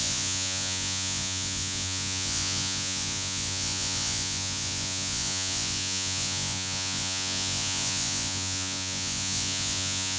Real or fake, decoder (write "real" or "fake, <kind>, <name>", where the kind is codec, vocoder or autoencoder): fake, vocoder, Vocos